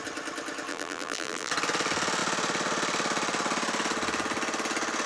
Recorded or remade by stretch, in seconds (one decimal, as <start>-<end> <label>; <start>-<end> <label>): 0.0-0.7 recorded; 0.7-1.5 remade; 1.5-5.1 recorded